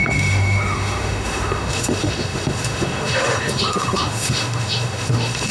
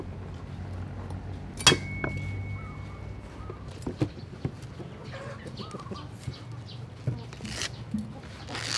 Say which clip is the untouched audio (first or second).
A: second